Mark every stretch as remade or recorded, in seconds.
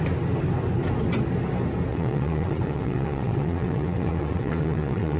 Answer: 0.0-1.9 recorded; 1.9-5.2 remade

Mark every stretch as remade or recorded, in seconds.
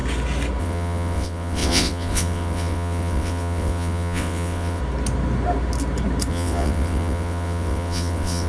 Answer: 0.0-0.6 recorded; 0.6-4.8 remade; 4.8-6.3 recorded; 6.3-8.5 remade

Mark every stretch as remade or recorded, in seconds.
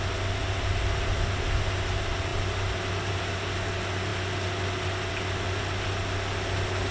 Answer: 0.0-6.9 recorded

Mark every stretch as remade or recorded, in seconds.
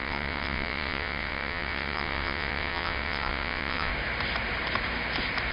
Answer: 0.0-3.9 remade; 3.9-5.5 recorded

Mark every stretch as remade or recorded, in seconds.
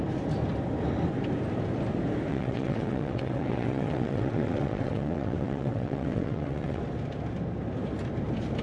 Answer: 0.0-2.3 recorded; 2.3-6.8 remade; 6.8-8.6 recorded